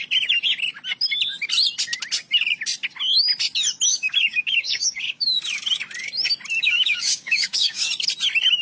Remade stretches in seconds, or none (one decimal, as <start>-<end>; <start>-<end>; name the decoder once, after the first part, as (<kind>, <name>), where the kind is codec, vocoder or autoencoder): 3.9-5.4 (codec, DAC); 6.6-7.9